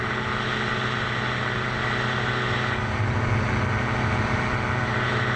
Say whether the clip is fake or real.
real